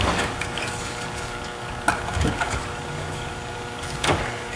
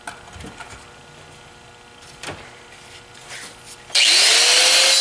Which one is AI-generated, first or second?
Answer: first